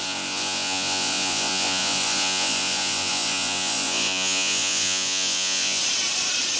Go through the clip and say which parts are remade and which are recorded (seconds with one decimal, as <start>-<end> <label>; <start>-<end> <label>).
0.0-5.8 remade; 5.8-6.6 recorded